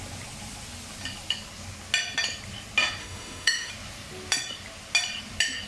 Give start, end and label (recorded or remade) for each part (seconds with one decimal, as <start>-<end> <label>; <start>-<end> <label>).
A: 0.0-3.0 recorded; 3.0-3.7 remade; 3.7-5.7 recorded